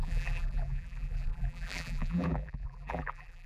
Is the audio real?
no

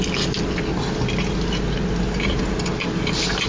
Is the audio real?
yes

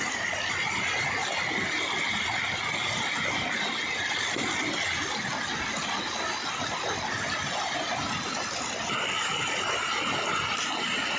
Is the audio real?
yes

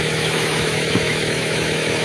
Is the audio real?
no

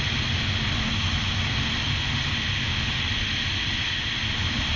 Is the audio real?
yes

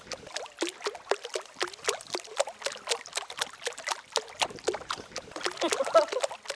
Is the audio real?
yes